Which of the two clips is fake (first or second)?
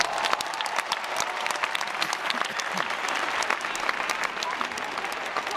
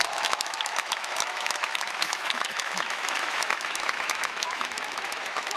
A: second